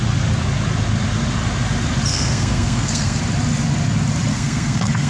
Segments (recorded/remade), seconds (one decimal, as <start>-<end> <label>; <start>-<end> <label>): 0.0-2.1 recorded; 2.1-3.2 remade; 3.2-4.3 recorded; 4.3-5.1 remade